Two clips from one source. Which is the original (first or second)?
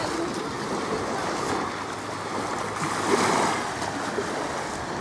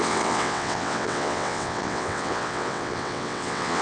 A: first